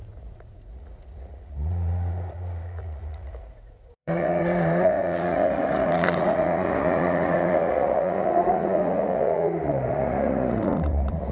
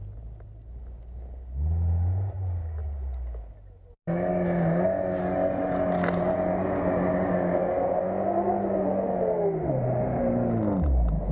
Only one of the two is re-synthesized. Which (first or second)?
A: first